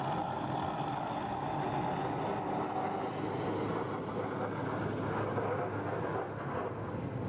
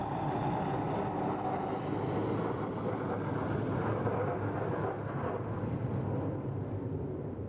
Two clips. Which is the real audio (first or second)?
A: first